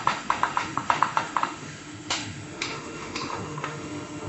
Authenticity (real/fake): fake